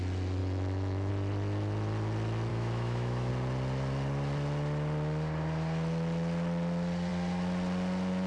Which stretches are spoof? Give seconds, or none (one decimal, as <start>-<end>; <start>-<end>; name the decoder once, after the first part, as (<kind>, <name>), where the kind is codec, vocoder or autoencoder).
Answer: 0.4-1.1 (autoencoder, DAC-VAE); 2.5-3.3